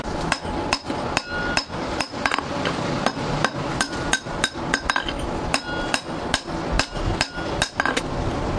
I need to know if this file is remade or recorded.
recorded